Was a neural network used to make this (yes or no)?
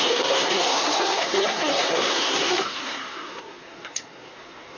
yes